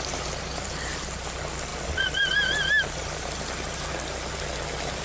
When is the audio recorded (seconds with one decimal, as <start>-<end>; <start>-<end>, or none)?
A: 0.0-5.0